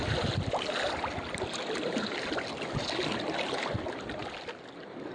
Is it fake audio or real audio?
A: real